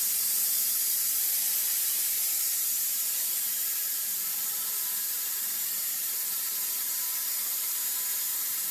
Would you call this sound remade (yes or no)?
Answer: yes